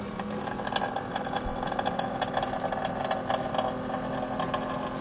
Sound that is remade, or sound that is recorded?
recorded